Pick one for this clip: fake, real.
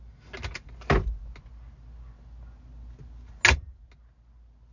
real